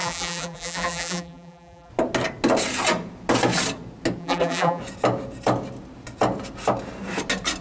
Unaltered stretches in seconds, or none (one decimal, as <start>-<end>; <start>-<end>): 1.9-4.2; 4.8-7.6